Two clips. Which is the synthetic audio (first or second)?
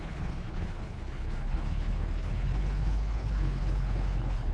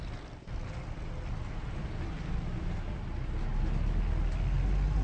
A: first